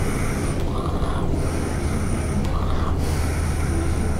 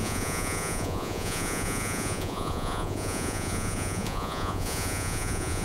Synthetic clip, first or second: second